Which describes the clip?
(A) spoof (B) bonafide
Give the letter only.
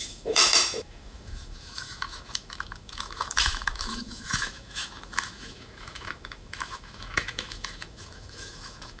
A